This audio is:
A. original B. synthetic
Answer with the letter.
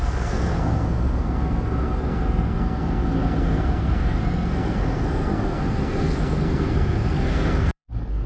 B